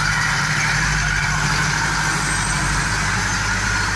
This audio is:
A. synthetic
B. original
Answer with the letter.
A